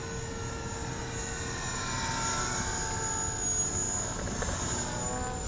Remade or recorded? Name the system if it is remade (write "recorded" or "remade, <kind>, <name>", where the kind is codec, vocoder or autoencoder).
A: recorded